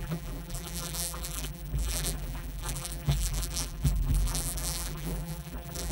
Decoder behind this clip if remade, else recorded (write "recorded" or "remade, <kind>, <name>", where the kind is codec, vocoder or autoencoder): remade, vocoder, BigVGAN v2